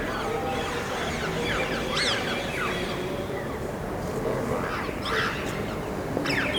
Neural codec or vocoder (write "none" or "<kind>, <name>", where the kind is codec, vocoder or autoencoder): none